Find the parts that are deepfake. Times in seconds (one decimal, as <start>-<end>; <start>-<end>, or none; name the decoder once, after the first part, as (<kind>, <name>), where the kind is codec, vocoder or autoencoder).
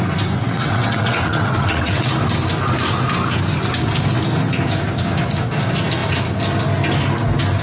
0.4-2.1 (vocoder, WaveNeXt)